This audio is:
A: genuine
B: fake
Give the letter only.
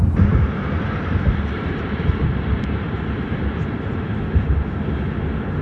B